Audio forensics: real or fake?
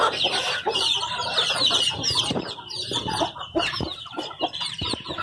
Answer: fake